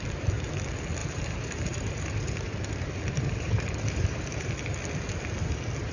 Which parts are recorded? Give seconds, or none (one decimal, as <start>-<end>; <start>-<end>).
0.0-1.0; 4.5-5.9